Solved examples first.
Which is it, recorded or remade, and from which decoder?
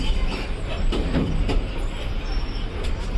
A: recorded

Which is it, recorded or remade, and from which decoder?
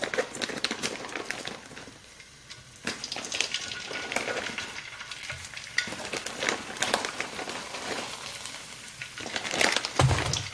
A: remade, vocoder, BigVGAN v2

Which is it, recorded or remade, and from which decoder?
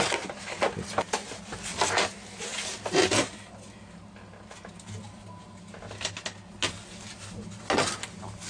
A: recorded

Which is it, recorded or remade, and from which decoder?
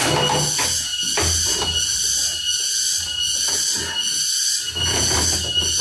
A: recorded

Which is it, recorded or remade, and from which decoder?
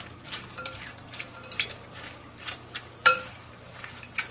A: remade, vocoder, BigVGAN v2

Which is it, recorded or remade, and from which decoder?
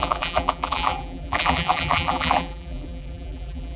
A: remade, vocoder, BigVGAN v2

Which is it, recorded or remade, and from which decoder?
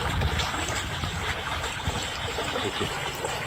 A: remade, vocoder, BigVGAN v2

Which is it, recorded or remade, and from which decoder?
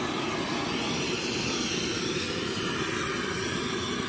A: recorded